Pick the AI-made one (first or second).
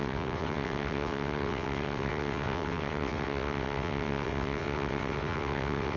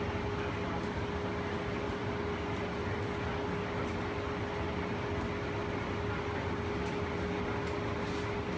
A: first